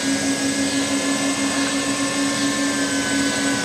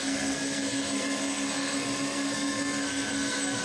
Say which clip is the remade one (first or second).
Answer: second